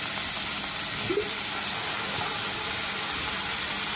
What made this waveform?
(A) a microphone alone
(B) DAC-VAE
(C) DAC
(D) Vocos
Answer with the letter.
A